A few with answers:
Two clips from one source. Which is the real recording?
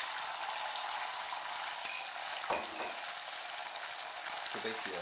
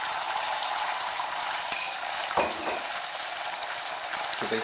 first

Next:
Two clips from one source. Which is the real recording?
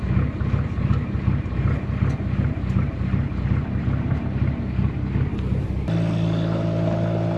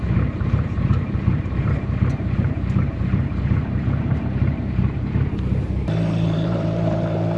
first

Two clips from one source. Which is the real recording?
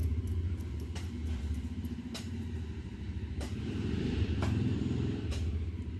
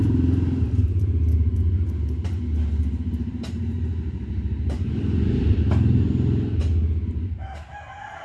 second